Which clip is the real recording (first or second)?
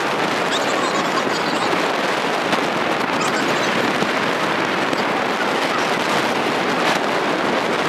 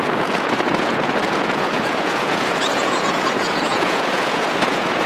first